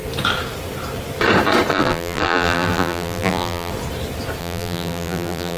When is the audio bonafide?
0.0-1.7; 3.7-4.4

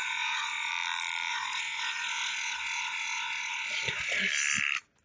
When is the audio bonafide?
0.7-1.3; 4.3-5.0

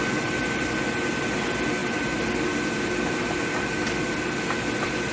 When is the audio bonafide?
0.0-5.1

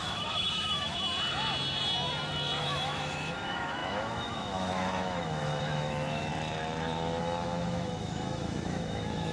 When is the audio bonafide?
1.1-2.6; 6.3-7.2

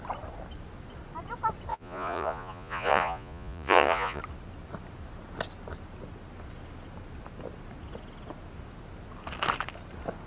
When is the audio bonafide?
0.0-1.7; 4.2-10.3

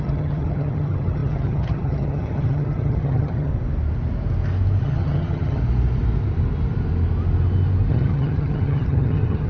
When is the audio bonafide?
3.5-4.8; 5.6-7.9